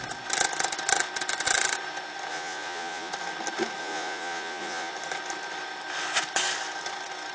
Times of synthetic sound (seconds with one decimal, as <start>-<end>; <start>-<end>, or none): 2.3-3.1; 3.8-4.9